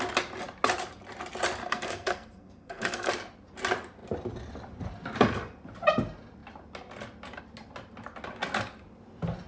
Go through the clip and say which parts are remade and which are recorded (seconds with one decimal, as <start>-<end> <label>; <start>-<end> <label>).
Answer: 0.0-1.6 recorded; 1.6-3.1 remade; 3.1-9.5 recorded